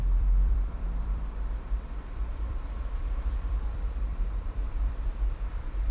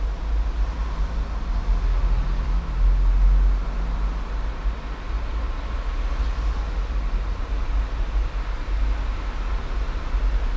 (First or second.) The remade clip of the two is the first